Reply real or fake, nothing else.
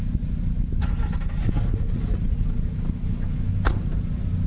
real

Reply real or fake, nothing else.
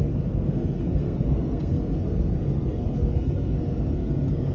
fake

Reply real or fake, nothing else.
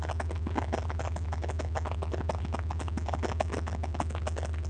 real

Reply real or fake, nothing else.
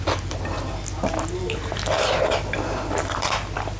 real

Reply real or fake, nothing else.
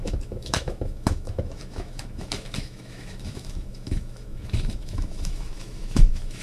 fake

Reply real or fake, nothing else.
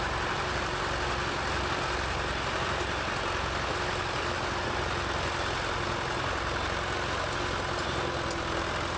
real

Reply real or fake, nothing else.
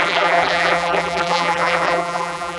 fake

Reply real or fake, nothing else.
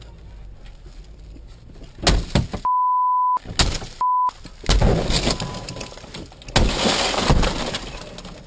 real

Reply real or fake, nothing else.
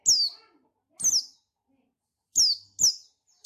real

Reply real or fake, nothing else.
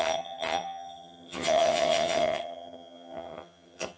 fake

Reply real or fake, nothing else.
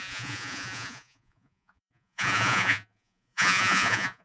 fake